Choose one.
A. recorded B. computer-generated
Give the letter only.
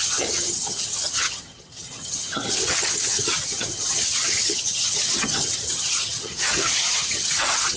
B